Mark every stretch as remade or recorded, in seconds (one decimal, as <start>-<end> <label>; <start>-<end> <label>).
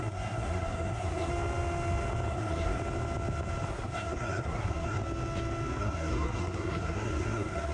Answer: 0.0-1.3 remade; 1.3-2.3 recorded; 2.3-2.8 remade; 2.8-3.7 recorded; 3.7-5.0 remade; 5.0-5.8 recorded; 5.8-7.7 remade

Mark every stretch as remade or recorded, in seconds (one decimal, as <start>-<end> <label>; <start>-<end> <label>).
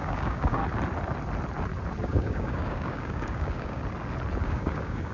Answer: 0.0-0.6 remade; 0.6-2.0 recorded; 2.0-3.8 remade; 3.8-4.4 recorded; 4.4-5.1 remade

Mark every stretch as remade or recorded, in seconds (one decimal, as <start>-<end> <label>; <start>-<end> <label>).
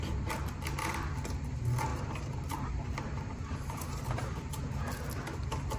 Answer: 0.0-1.9 recorded; 1.9-4.1 remade; 4.1-5.8 recorded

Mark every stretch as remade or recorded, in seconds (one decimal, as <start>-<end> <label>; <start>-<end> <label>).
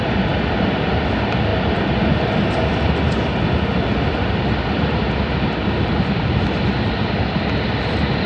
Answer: 0.0-8.3 recorded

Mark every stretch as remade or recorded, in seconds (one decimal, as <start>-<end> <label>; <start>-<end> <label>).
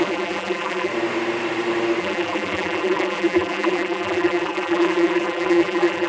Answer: 0.0-0.9 remade; 0.9-2.0 recorded; 2.0-6.1 remade